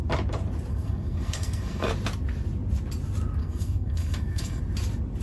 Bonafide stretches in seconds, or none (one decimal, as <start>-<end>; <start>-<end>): 0.0-0.7; 1.9-3.4; 4.6-5.2